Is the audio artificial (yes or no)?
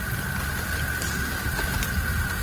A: no